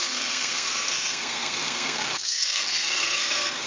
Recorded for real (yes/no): no